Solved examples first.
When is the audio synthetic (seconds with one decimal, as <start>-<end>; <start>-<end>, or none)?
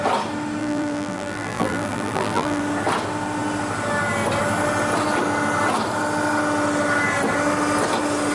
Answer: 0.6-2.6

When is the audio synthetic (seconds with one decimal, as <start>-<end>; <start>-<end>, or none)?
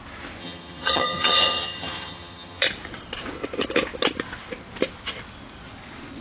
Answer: 0.4-2.6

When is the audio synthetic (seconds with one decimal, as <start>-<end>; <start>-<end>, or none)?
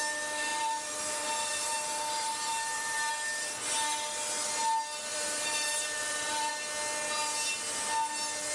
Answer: 0.5-3.1; 5.1-6.5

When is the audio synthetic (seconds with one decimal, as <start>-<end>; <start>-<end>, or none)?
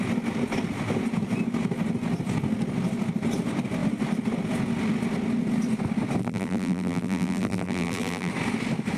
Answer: 6.2-8.3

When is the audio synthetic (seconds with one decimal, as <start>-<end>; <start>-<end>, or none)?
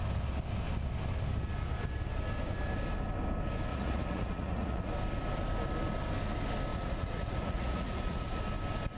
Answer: 3.7-4.9; 6.7-8.4